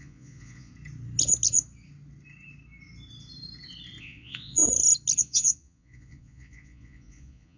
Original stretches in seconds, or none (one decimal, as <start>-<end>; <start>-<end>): 0.7-4.0; 4.6-5.2